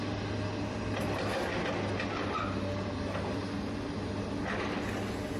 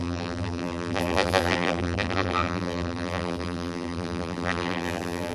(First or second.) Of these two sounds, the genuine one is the first